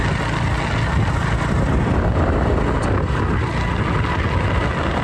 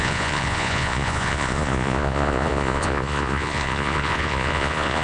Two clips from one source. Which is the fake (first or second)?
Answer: second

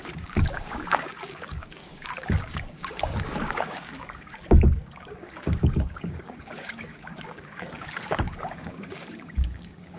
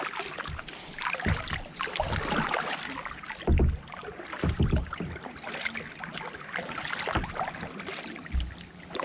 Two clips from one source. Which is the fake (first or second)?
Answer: first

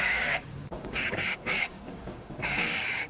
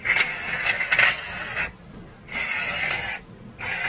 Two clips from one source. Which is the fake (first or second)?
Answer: first